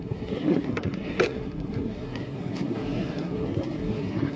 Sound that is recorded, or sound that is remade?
remade